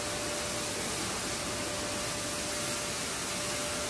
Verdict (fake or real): real